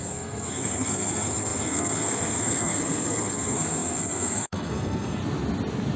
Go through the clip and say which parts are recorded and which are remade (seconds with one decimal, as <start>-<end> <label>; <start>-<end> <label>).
0.0-5.2 remade; 5.2-6.0 recorded